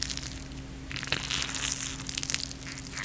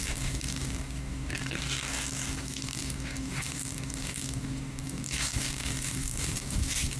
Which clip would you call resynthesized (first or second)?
second